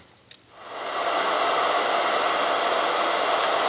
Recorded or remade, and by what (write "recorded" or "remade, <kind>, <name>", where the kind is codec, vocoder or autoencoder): recorded